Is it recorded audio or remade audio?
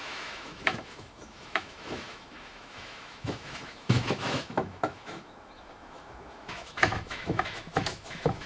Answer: remade